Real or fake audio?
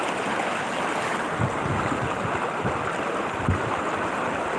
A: real